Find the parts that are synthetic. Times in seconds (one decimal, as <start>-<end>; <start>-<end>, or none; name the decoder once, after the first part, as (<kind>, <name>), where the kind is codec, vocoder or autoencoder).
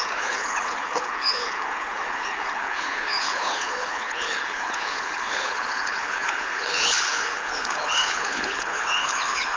0.0-9.6 (codec, HILCodec)